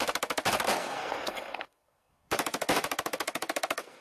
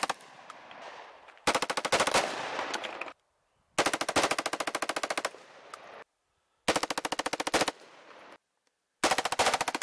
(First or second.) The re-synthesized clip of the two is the first